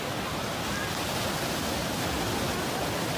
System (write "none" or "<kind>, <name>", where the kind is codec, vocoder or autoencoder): none